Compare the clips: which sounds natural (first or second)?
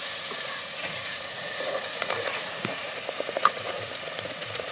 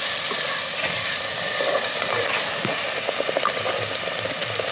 second